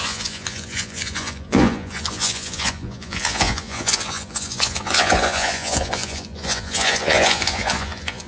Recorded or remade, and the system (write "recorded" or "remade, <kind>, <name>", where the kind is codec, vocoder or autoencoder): remade, vocoder, Vocos